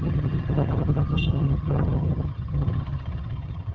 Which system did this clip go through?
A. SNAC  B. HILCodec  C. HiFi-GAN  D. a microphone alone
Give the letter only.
C